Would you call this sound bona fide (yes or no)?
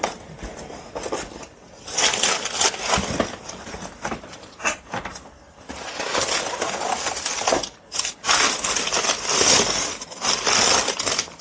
yes